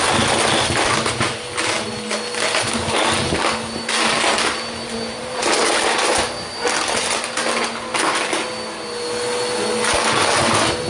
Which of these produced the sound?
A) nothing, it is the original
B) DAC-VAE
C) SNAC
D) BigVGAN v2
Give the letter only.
A